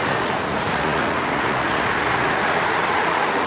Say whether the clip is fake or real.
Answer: fake